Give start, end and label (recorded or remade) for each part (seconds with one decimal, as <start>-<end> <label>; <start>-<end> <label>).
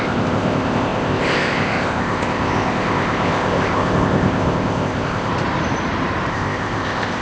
0.0-5.3 remade; 5.3-6.3 recorded; 6.3-7.2 remade